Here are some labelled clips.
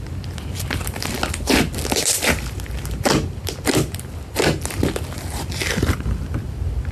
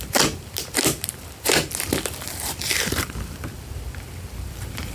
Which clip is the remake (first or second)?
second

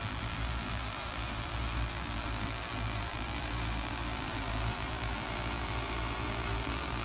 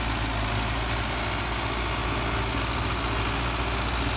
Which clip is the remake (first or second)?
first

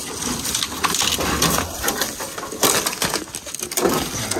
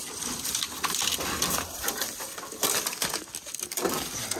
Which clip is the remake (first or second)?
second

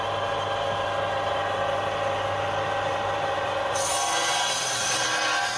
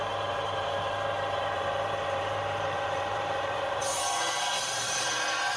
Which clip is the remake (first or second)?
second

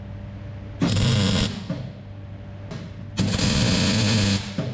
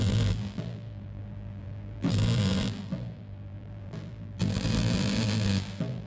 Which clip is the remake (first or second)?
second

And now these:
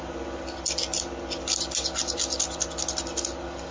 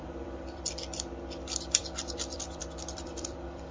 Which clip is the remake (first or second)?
second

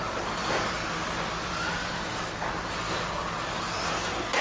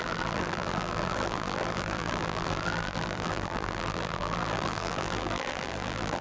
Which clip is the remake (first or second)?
second